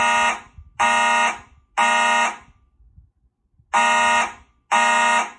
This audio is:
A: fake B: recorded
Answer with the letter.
B